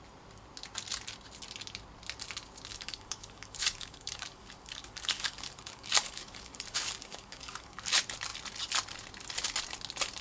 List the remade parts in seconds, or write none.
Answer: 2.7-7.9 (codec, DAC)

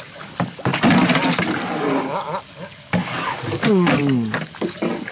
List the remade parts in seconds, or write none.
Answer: 0.0-0.7 (codec, DAC); 2.0-5.1

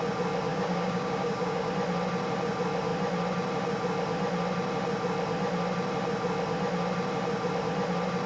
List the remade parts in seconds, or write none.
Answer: 0.5-1.7 (codec, DAC)

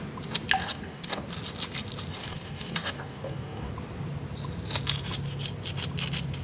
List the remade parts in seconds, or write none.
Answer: 0.6-1.2 (codec, DAC); 2.1-3.7

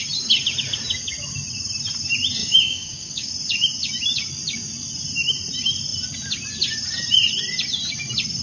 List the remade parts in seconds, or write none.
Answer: 2.4-3.3 (codec, DAC)